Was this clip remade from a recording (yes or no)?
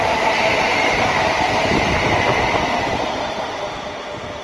no